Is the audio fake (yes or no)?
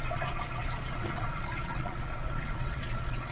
yes